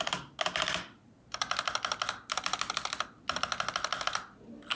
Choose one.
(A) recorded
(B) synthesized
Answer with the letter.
A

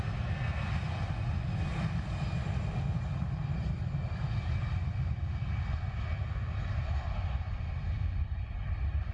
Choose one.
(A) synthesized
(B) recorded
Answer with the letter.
B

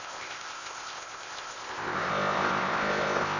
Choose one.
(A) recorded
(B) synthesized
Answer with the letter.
B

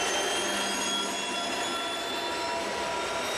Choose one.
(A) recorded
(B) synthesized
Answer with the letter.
A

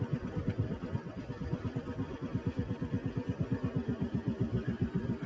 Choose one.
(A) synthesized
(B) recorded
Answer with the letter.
A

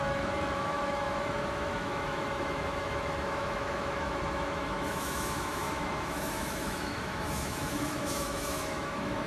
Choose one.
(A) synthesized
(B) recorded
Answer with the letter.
A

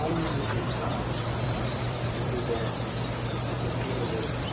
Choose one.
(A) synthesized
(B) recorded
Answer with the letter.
A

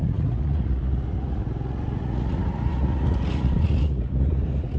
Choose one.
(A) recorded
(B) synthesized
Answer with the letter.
B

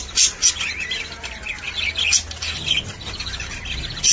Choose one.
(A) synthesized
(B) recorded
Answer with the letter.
B